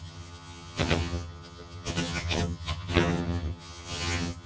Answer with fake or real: fake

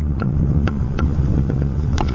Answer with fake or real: fake